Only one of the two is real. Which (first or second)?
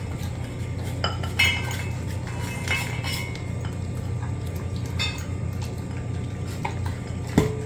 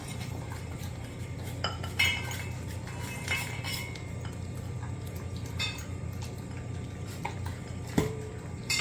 first